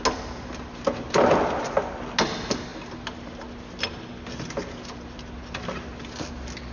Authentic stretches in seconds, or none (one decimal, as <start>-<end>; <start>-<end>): 0.0-6.7